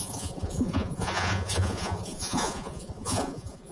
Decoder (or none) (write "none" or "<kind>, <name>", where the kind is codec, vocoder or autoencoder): vocoder, Vocos